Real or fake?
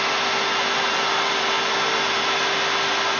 real